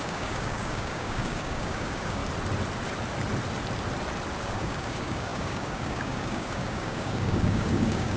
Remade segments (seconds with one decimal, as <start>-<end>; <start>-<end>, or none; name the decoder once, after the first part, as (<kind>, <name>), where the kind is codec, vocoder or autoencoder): 0.0-2.2 (codec, DAC); 4.4-8.2